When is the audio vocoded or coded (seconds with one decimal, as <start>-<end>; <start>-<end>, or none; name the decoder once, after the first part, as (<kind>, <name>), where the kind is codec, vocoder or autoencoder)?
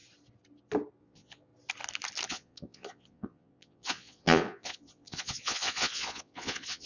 1.0-1.5 (vocoder, Vocos); 2.3-6.9